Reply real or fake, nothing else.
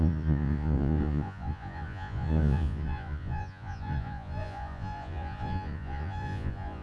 fake